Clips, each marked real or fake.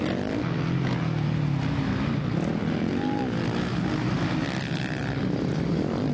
real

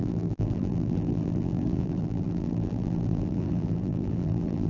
fake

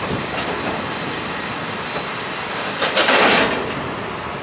real